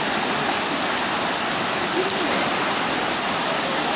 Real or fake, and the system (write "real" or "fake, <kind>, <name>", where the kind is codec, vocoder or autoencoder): real